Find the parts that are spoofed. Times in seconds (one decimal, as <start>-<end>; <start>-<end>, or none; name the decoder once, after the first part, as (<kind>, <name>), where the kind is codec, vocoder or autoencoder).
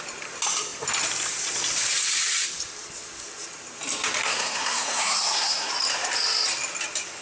4.2-5.7 (codec, SNAC)